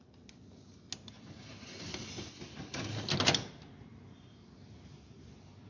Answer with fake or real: real